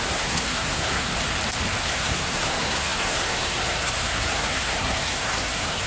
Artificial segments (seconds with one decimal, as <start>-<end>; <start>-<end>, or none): 0.0-1.1; 1.8-5.9